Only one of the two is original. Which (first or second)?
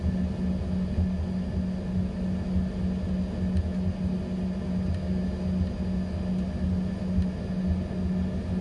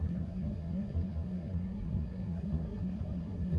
first